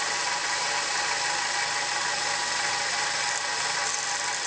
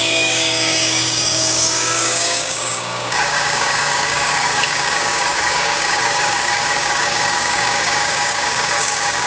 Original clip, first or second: first